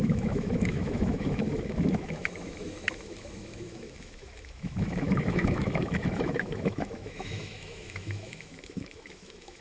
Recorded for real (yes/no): no